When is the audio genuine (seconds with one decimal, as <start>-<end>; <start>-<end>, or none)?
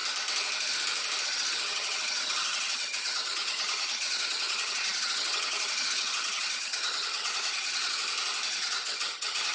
0.0-1.2; 8.0-8.5